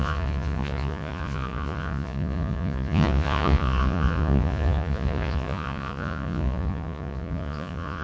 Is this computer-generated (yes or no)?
yes